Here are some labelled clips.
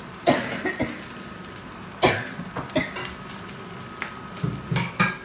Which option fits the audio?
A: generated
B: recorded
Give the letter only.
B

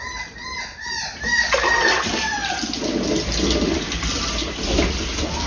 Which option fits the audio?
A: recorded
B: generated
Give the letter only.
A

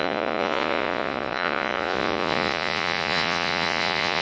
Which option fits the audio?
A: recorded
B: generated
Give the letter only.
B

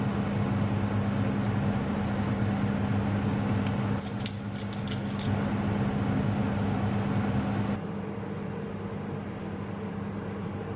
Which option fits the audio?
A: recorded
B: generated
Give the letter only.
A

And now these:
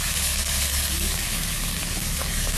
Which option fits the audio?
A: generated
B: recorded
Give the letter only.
A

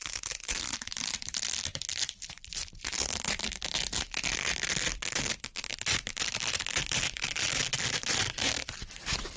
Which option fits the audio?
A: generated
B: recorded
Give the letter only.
A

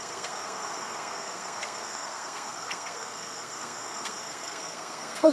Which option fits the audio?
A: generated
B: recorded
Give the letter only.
A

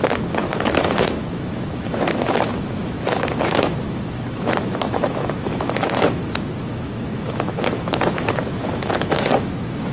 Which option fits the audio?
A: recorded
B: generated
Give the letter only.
B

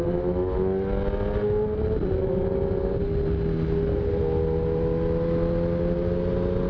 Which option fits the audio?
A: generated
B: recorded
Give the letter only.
B